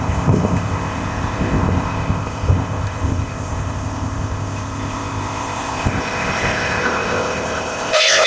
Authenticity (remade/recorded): remade